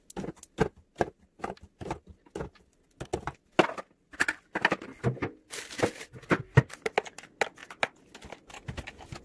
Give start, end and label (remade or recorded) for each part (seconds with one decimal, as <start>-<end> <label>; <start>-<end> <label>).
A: 0.0-9.2 recorded